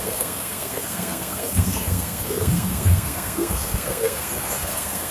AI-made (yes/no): yes